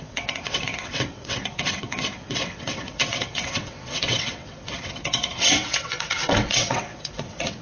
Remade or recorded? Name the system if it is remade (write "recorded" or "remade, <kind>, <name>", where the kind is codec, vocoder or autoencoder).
remade, vocoder, WaveNeXt